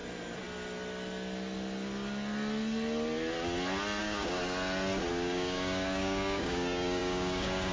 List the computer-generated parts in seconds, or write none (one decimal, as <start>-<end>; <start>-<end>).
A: 4.0-4.4; 5.1-7.7